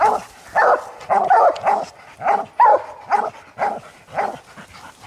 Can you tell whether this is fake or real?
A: real